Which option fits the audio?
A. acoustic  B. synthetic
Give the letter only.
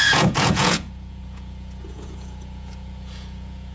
B